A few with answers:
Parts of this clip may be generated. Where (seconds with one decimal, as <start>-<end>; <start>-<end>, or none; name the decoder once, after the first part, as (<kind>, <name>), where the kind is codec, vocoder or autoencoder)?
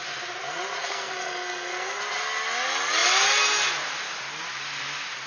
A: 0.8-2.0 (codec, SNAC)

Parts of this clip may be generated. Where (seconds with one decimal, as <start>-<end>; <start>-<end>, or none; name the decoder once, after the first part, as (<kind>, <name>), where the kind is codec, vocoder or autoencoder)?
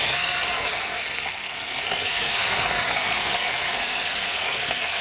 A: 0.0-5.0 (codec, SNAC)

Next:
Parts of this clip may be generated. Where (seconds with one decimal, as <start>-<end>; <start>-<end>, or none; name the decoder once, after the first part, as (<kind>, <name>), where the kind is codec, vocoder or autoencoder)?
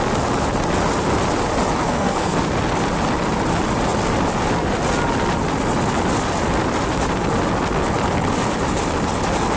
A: 1.8-2.4 (codec, SNAC)